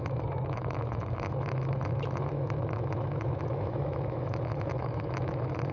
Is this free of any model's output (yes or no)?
no